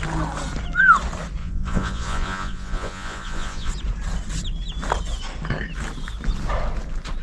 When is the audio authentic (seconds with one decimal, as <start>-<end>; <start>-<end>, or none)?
0.0-1.4; 3.7-7.2